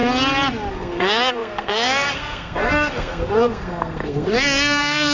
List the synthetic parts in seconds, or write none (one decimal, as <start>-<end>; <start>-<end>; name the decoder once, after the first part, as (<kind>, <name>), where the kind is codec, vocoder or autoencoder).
0.7-5.1 (codec, SNAC)